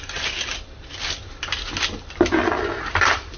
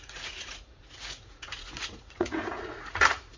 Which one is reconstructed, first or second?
second